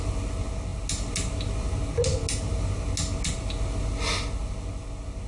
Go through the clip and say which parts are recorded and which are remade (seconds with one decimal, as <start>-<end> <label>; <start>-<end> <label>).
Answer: 0.0-5.3 recorded